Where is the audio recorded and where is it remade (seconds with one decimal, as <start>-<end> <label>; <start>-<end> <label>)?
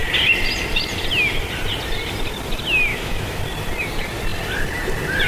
0.0-2.9 recorded; 2.9-3.4 remade; 3.4-5.3 recorded